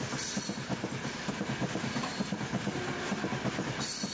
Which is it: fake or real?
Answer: real